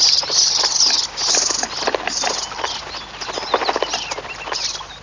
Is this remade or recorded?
recorded